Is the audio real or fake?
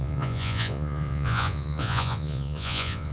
fake